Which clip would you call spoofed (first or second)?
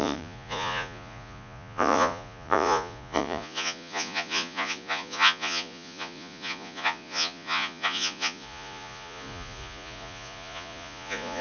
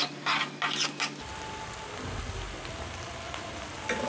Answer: first